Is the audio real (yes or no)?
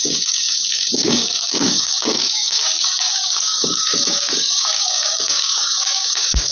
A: no